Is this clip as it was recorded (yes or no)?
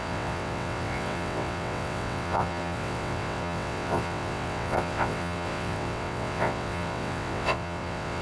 no